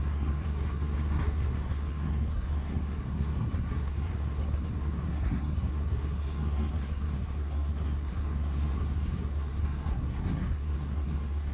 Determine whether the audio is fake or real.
fake